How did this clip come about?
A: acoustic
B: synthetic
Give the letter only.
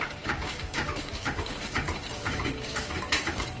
B